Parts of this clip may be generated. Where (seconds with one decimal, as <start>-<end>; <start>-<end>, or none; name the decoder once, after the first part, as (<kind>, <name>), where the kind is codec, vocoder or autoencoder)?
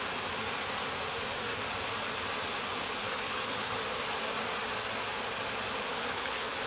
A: 3.0-3.8 (codec, HILCodec); 5.9-6.7